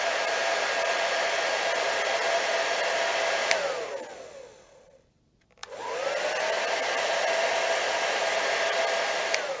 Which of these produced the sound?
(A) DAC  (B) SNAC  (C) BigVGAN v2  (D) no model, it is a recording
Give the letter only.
D